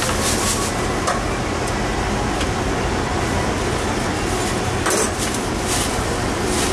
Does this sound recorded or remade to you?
recorded